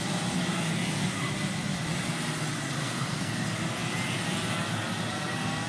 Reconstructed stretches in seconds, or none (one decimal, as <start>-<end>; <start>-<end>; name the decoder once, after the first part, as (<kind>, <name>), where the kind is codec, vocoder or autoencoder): 2.8-3.3 (codec, SNAC)

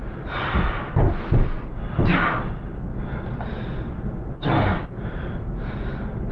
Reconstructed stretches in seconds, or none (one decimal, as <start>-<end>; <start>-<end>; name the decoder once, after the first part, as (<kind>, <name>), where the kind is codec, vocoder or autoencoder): none

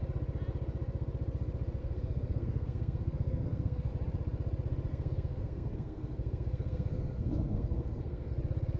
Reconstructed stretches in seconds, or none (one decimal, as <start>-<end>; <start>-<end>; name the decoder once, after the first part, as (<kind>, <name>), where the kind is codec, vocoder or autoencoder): 1.8-3.9 (codec, SNAC); 4.9-8.3

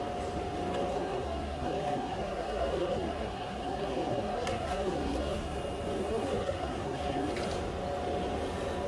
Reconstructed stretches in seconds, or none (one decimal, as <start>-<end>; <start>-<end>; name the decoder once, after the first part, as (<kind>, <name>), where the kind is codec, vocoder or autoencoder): 0.9-5.6 (codec, SNAC); 6.0-7.3

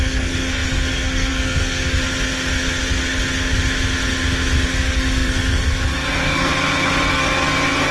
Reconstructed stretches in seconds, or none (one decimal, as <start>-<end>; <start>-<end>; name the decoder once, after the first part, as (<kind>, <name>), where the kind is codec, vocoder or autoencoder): 0.0-2.0 (codec, SNAC); 4.7-6.5; 7.1-7.9

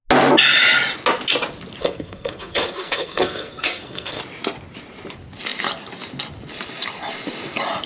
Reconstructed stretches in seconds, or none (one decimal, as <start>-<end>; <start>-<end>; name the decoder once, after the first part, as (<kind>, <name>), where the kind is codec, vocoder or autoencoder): 1.8-4.2 (codec, SNAC)

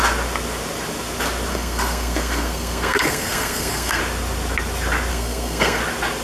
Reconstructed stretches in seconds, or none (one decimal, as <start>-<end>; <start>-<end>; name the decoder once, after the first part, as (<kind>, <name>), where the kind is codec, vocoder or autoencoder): 1.5-4.0 (codec, SNAC); 5.1-5.8